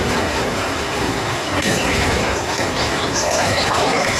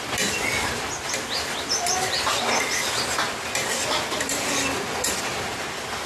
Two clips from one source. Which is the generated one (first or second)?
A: first